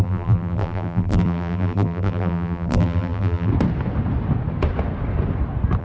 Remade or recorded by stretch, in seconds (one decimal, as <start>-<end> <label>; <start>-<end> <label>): 0.0-3.5 remade; 3.5-5.8 recorded